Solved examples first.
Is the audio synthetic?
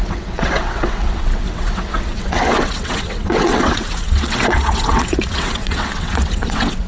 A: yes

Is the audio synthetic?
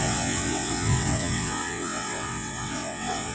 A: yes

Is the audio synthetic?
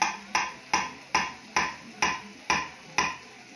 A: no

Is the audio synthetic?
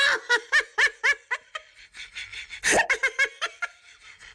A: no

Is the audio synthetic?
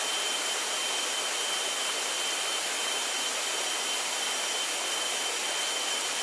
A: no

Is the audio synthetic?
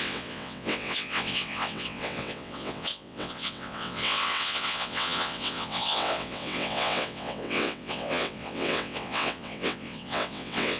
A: yes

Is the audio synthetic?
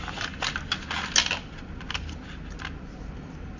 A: no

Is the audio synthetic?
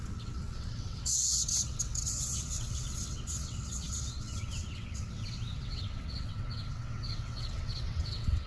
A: yes